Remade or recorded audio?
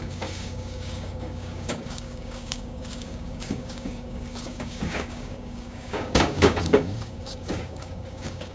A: remade